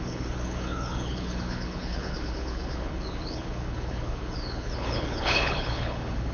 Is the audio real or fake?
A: fake